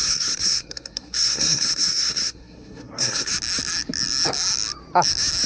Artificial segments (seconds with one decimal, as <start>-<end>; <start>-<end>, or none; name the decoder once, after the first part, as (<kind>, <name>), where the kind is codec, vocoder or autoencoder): 0.0-3.3 (codec, SNAC)